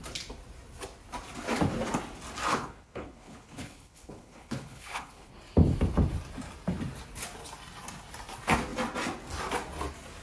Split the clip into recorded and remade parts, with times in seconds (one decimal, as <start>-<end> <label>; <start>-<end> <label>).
0.0-2.5 recorded; 2.5-5.3 remade; 5.3-10.2 recorded